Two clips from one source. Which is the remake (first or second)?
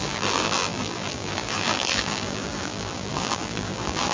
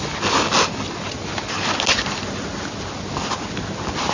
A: first